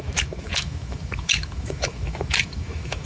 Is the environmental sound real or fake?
fake